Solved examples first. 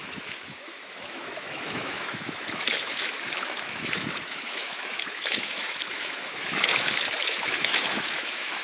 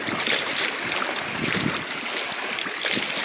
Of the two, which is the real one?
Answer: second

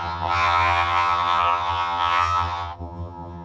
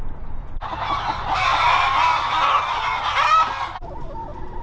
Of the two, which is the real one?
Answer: second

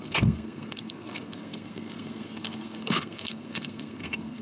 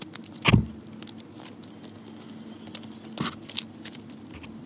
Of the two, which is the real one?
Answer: second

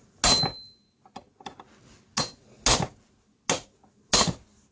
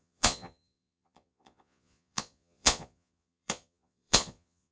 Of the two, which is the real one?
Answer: first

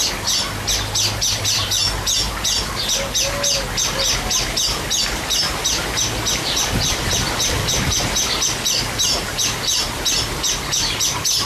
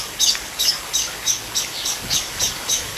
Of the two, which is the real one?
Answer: first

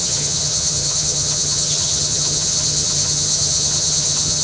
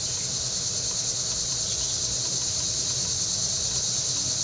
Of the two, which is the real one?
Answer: second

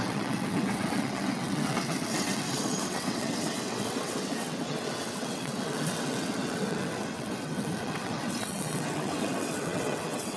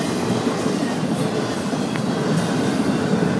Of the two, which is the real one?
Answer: second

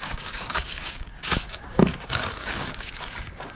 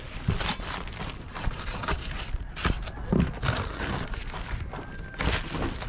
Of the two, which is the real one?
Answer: second